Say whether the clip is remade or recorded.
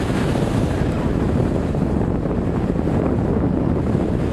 recorded